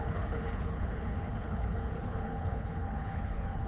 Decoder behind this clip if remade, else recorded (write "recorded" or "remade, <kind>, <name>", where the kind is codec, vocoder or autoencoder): remade, codec, HILCodec